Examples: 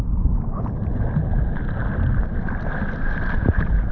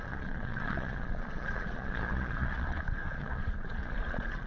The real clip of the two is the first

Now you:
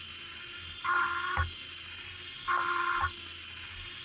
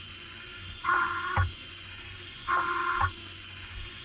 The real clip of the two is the first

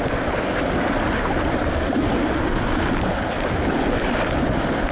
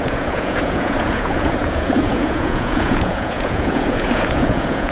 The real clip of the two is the first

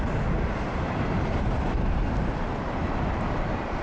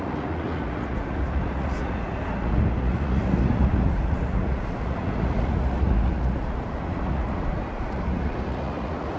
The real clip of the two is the first